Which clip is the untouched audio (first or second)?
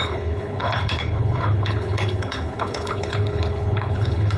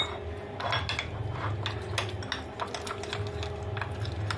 second